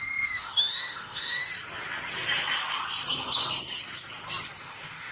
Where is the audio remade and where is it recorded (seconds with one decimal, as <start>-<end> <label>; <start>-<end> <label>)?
0.0-1.5 remade; 1.5-4.6 recorded; 4.6-5.1 remade